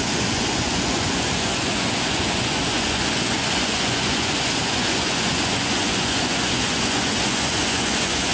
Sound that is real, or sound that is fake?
fake